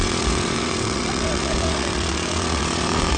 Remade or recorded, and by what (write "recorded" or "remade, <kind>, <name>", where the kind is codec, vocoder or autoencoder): remade, vocoder, WaveNeXt